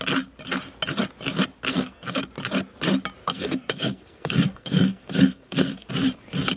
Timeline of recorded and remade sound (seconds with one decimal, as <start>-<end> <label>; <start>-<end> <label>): 0.0-1.7 recorded; 1.7-2.2 remade; 2.2-3.2 recorded; 3.2-5.9 remade; 5.9-6.6 recorded